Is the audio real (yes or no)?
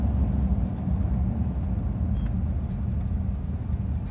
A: yes